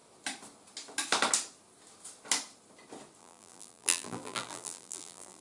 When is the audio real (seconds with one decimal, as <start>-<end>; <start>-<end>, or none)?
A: 0.0-3.2